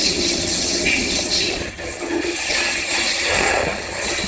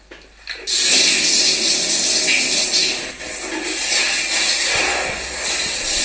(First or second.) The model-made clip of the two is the first